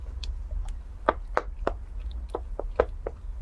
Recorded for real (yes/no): yes